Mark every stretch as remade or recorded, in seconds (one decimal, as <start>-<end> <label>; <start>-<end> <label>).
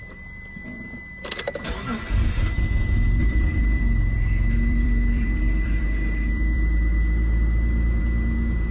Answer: 0.0-3.2 recorded; 3.2-8.0 remade; 8.0-8.7 recorded